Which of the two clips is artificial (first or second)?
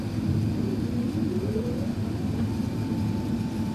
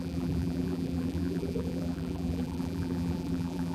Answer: second